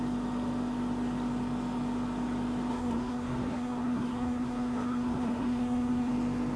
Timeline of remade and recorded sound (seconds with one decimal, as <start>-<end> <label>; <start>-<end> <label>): 0.0-2.7 recorded; 2.7-6.1 remade; 6.1-6.6 recorded